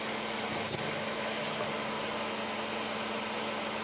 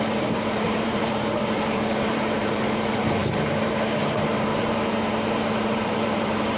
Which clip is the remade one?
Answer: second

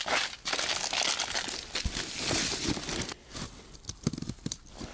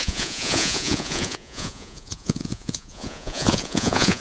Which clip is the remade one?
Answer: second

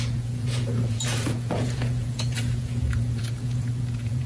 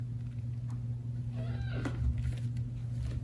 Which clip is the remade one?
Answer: first